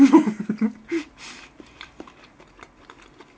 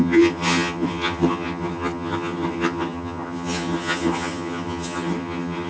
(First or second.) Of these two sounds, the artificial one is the second